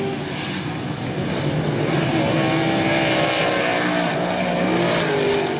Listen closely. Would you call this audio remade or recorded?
recorded